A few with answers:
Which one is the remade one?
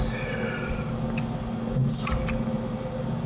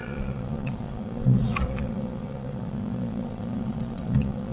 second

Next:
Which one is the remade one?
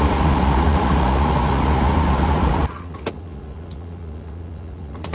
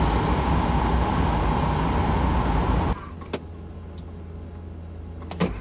first